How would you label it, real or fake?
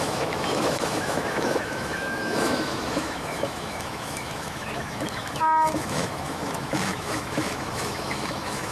fake